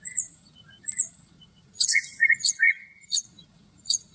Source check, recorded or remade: remade